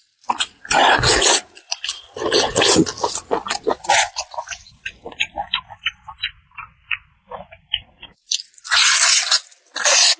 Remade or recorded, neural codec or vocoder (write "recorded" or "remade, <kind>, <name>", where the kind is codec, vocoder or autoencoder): recorded